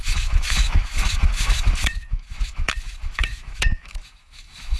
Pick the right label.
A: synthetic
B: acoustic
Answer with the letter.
A